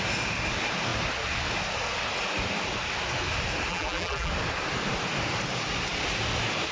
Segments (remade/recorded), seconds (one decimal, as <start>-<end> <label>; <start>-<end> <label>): 0.0-3.7 recorded; 3.7-4.3 remade; 4.3-6.7 recorded